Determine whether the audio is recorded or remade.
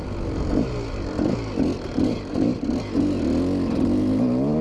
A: recorded